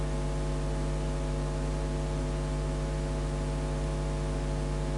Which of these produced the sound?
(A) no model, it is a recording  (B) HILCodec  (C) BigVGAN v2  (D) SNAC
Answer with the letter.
A